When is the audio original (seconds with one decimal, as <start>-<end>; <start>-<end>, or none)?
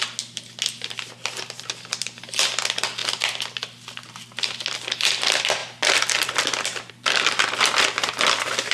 0.0-8.7